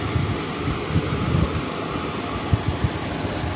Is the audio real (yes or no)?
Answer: yes